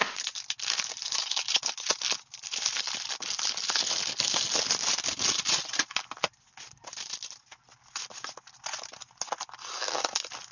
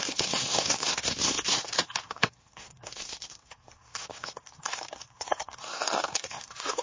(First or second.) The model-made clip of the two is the second